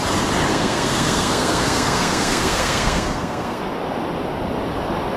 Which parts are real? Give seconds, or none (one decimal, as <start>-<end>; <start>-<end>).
0.0-0.5; 3.6-5.2